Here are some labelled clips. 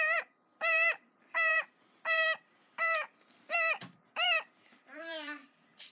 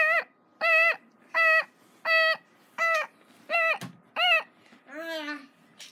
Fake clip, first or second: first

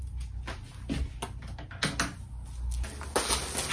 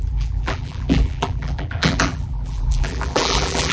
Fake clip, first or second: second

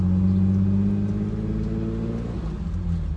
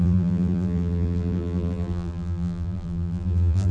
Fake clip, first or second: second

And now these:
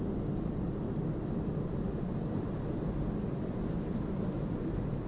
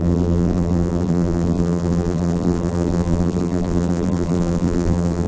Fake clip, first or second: second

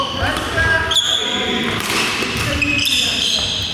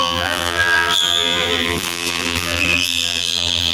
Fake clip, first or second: second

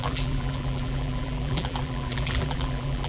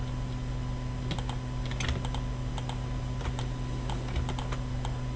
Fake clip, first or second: first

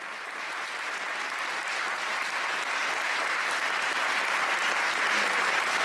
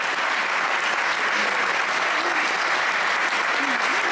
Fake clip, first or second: first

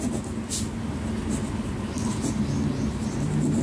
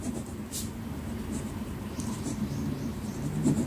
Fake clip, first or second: second